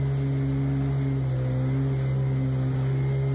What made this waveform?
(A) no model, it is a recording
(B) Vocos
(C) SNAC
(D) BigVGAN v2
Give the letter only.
A